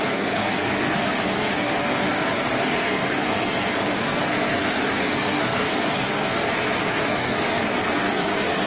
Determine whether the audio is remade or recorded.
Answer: remade